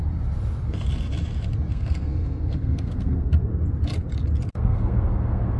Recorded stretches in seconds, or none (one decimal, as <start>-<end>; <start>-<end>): 0.0-1.7; 3.5-4.5